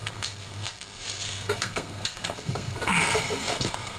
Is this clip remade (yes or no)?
yes